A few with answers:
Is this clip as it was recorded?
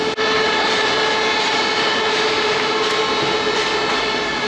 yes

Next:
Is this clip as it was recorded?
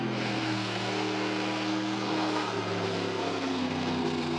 no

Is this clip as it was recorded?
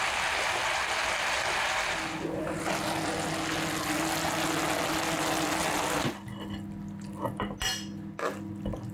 yes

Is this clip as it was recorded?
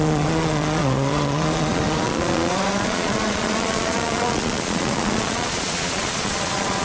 no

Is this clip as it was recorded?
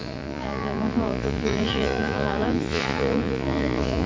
no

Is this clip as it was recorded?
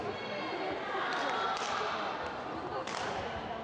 yes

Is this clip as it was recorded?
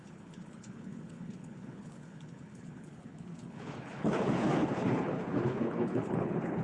no